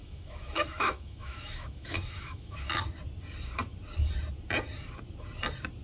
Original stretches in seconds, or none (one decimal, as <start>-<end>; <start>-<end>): 2.8-5.8